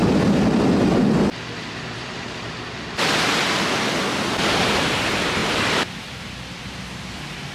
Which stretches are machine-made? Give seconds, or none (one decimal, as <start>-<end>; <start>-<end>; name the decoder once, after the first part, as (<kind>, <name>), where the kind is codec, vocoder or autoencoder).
none